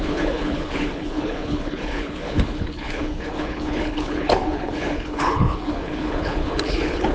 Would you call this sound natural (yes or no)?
no